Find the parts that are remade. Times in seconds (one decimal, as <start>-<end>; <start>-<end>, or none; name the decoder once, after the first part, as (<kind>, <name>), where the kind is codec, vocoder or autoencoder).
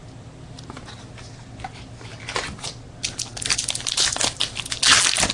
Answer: none